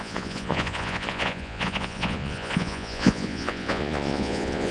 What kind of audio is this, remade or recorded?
remade